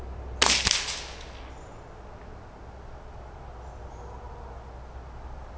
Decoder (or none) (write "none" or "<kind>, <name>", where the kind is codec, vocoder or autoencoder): none